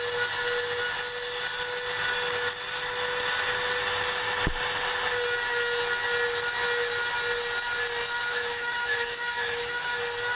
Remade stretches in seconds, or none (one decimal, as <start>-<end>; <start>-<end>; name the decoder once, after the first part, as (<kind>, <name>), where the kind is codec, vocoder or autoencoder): 8.3-10.0 (autoencoder, DAC-VAE)